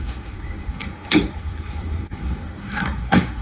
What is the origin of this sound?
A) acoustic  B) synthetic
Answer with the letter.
B